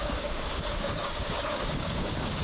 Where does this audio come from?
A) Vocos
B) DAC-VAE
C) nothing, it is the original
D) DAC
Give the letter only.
D